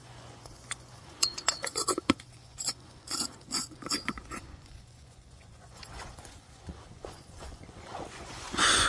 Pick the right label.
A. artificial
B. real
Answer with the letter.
A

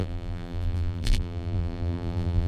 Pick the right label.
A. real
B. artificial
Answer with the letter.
B